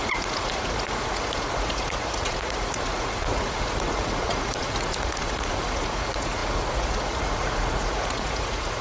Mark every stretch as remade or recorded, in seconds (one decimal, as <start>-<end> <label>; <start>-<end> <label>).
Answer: 0.0-8.8 remade